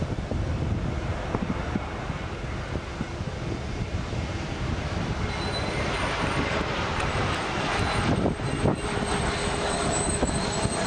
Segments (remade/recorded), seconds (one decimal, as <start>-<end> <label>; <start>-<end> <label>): 0.0-9.4 recorded; 9.4-10.3 remade; 10.3-10.9 recorded